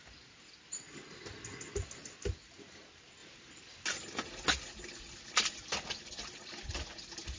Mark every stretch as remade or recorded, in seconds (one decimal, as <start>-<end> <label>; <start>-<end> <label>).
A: 0.0-7.4 recorded